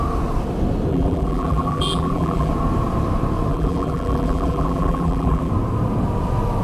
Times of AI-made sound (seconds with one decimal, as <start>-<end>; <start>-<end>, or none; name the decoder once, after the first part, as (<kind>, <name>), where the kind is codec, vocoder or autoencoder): 0.9-2.5 (vocoder, BigVGAN v2); 3.5-5.5

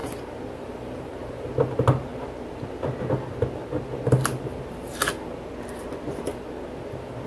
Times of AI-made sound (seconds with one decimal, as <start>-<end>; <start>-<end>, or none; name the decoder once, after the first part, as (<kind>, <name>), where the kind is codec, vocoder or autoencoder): 0.0-1.5 (vocoder, BigVGAN v2)

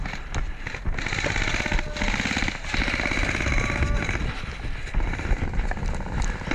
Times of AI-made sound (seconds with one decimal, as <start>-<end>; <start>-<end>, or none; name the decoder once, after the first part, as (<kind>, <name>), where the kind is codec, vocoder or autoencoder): none

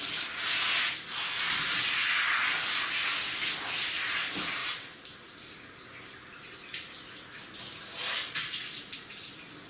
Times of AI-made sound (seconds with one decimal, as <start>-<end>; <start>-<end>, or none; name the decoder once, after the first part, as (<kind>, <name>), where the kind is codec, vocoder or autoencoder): 4.6-5.4 (vocoder, BigVGAN v2); 8.1-8.6

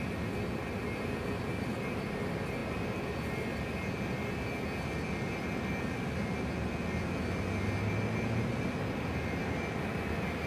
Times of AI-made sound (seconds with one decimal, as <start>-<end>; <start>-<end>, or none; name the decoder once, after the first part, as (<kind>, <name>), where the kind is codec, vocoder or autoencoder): none

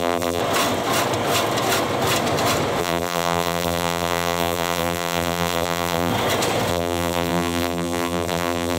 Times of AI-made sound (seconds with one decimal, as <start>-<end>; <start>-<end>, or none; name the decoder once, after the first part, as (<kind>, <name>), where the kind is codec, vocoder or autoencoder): 0.0-0.4 (vocoder, BigVGAN v2); 2.8-6.1; 6.7-8.8

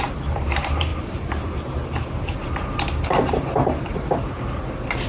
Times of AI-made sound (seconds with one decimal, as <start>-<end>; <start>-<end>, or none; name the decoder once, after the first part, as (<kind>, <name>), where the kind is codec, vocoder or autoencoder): 0.0-5.1 (vocoder, BigVGAN v2)

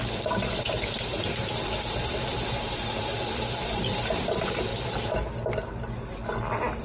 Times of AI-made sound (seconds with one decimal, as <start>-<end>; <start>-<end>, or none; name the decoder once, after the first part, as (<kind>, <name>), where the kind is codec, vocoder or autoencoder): 0.0-4.7 (vocoder, BigVGAN v2)